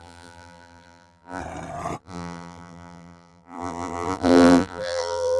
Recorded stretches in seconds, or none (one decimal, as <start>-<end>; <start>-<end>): 1.4-2.0